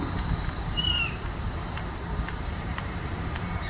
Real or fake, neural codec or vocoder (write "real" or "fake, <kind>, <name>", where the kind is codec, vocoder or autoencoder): fake, vocoder, BigVGAN v2